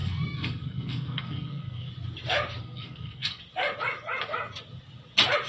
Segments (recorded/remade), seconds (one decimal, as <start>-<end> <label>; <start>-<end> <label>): 0.0-1.9 remade; 1.9-2.6 recorded; 2.6-3.4 remade; 3.4-5.5 recorded